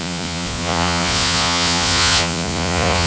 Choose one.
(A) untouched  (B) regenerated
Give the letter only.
B